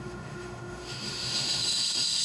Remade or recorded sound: remade